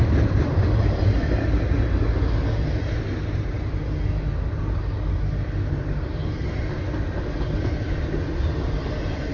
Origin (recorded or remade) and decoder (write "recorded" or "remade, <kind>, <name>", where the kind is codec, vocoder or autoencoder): recorded